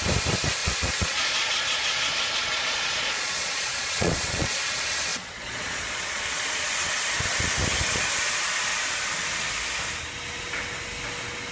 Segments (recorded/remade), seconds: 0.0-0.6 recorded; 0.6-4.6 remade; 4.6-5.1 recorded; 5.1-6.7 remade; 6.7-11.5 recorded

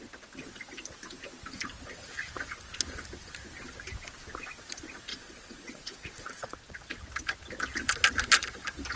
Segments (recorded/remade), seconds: 0.0-5.1 recorded; 5.1-7.0 remade; 7.0-9.0 recorded

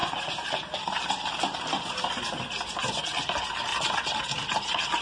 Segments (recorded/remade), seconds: 0.0-5.0 recorded

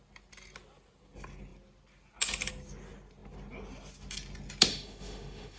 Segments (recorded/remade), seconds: 0.0-4.7 recorded; 4.7-5.6 remade

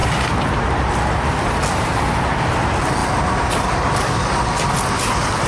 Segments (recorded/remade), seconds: 0.0-5.5 recorded

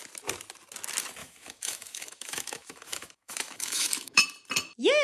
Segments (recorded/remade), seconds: 0.0-1.2 recorded; 1.2-4.2 remade; 4.2-5.0 recorded

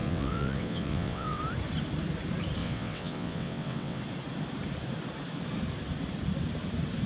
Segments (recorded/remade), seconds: 0.0-1.4 remade; 1.4-2.6 recorded; 2.6-4.0 remade; 4.0-7.1 recorded